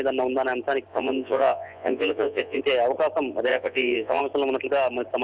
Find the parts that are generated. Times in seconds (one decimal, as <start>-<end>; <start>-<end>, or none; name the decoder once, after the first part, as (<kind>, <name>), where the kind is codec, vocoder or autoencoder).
0.9-2.6 (vocoder, Vocos); 3.5-4.2

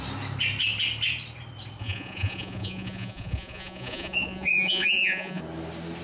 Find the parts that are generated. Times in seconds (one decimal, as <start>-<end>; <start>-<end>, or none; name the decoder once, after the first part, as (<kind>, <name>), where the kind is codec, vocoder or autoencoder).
1.8-5.4 (vocoder, Vocos)

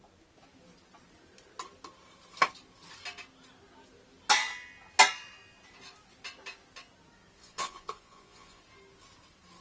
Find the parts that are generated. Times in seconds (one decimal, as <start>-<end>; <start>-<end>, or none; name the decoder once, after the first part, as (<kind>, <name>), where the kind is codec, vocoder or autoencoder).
7.4-8.6 (vocoder, Vocos)

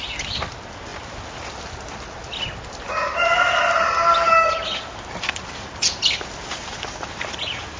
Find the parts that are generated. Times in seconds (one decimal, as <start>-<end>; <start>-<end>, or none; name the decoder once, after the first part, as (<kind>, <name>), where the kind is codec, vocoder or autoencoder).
none

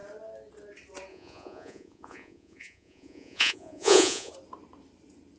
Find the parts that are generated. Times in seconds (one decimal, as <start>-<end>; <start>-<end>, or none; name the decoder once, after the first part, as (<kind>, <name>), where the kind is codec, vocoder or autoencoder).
1.1-4.3 (vocoder, Vocos)

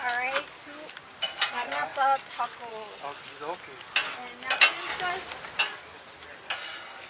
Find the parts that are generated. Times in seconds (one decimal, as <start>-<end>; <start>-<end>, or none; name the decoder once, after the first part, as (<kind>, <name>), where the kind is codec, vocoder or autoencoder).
none